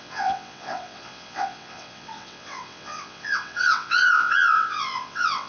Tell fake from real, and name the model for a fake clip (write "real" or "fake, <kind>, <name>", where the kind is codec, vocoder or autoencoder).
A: fake, vocoder, WaveNeXt